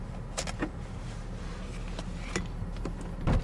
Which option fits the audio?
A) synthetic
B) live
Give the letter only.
B